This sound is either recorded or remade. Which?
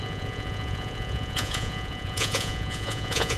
remade